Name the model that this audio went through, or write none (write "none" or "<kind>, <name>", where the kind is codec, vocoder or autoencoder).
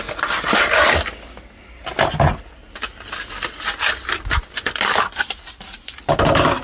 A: none